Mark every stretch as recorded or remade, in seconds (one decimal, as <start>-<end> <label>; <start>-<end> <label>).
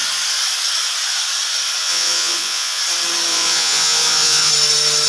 0.0-1.8 recorded; 1.8-2.8 remade; 2.8-3.3 recorded; 3.3-4.5 remade; 4.5-5.1 recorded